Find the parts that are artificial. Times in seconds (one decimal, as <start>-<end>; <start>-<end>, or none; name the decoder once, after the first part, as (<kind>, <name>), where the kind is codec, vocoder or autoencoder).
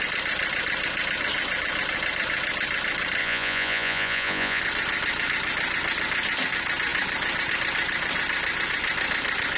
3.2-4.6 (vocoder, Vocos)